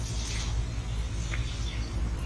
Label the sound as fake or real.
real